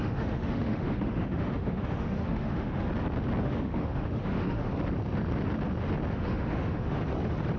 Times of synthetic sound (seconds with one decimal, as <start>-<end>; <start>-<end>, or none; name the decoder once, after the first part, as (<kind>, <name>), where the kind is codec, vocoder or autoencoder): 0.0-2.9 (autoencoder, DAC-VAE); 3.4-4.7; 6.1-7.0